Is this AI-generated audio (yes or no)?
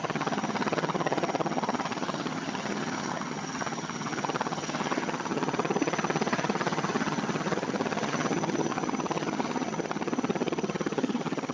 yes